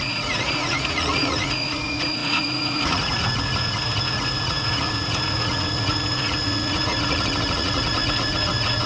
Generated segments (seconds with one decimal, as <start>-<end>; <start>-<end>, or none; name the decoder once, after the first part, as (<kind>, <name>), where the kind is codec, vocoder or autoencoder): 0.0-8.9 (vocoder, Vocos)